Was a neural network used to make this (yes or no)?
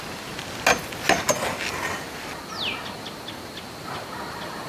no